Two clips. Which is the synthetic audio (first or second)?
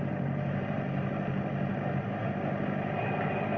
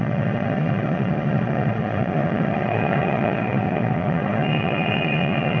second